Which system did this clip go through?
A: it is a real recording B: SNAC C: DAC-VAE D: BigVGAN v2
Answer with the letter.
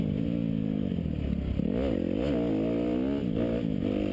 A